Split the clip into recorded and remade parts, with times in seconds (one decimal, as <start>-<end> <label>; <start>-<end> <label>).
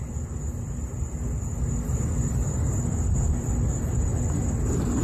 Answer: 0.0-5.0 recorded